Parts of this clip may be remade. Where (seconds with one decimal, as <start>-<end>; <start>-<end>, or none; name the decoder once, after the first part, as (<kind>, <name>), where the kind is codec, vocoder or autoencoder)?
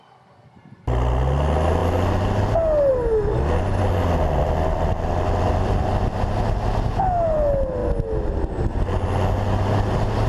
none